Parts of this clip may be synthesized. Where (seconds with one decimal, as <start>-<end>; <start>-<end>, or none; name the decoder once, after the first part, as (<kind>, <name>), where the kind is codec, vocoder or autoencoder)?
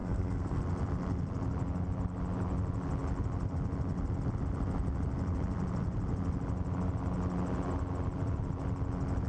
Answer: 0.0-0.6 (codec, SNAC)